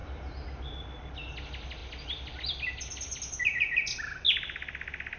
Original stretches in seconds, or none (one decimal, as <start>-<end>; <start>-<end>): 0.0-5.2